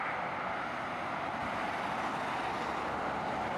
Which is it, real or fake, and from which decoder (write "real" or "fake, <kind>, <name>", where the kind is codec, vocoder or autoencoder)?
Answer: real